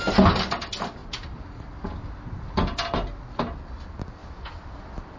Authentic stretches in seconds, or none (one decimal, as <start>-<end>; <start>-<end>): 0.0-4.2